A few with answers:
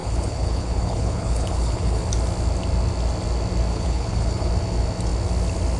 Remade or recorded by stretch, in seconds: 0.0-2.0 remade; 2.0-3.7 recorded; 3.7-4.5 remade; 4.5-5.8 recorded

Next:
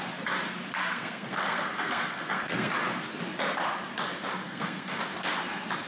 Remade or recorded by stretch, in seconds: 0.0-0.8 recorded; 0.8-2.7 remade; 2.7-4.4 recorded; 4.4-5.0 remade; 5.0-5.9 recorded

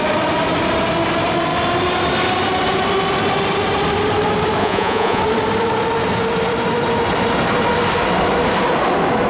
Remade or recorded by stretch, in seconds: 0.0-4.6 recorded; 4.6-5.2 remade; 5.2-9.3 recorded

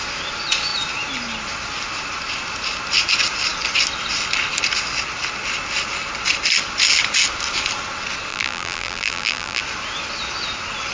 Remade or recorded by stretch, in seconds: 0.0-8.3 recorded; 8.3-9.6 remade; 9.6-10.9 recorded

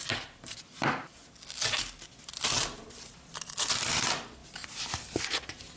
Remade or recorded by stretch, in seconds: 0.0-5.8 recorded

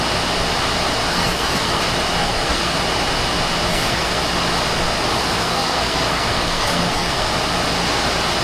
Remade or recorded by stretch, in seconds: 0.0-1.1 recorded; 1.1-1.8 remade; 1.8-2.2 recorded; 2.2-2.8 remade; 2.8-3.7 recorded; 3.7-4.2 remade; 4.2-5.4 recorded; 5.4-7.3 remade; 7.3-8.4 recorded

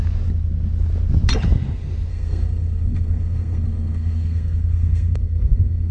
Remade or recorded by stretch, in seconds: 0.0-2.1 recorded; 2.1-5.9 remade

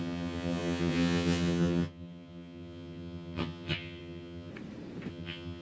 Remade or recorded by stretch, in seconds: 0.0-4.5 remade; 4.5-5.1 recorded; 5.1-5.6 remade